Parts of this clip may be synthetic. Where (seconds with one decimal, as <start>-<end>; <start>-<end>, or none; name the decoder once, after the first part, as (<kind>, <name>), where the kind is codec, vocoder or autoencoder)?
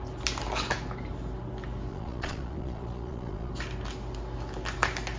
1.9-3.5 (vocoder, Vocos)